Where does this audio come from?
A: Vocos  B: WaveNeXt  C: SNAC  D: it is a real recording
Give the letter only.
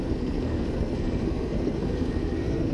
C